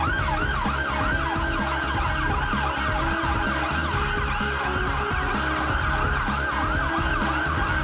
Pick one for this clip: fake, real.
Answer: real